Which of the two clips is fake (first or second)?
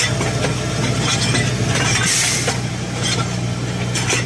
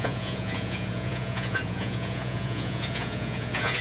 second